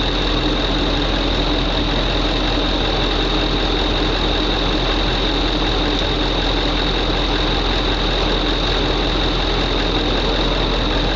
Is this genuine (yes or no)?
yes